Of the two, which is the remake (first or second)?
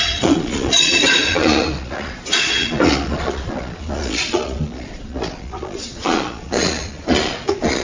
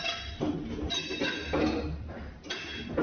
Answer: first